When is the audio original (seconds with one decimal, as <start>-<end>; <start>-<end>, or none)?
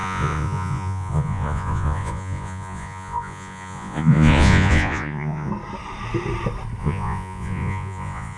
5.5-6.8